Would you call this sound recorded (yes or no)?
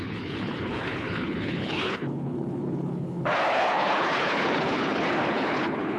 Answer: no